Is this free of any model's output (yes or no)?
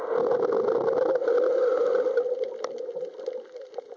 yes